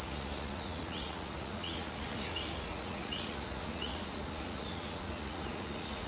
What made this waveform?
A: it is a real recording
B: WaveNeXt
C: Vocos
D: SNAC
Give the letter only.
C